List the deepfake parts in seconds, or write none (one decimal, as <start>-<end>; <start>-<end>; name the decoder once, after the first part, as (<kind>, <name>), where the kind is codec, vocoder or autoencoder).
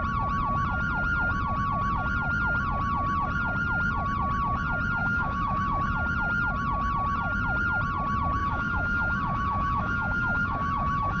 5.0-5.8 (autoencoder, DAC-VAE); 8.4-11.2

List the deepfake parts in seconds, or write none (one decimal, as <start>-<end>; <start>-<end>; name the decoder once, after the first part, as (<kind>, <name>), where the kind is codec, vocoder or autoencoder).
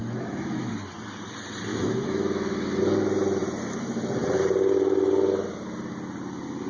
0.0-0.7 (autoencoder, DAC-VAE); 1.7-2.8